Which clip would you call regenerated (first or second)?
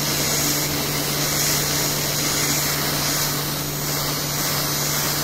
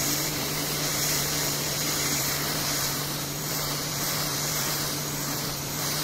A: second